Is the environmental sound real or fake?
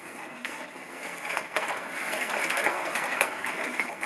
fake